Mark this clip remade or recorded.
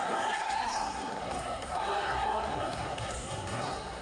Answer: remade